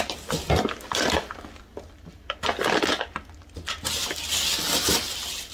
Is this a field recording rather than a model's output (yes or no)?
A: yes